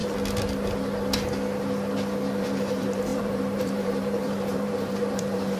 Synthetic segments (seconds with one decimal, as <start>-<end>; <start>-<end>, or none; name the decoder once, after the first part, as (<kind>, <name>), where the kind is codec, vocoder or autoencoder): 2.4-5.6 (vocoder, BigVGAN v2)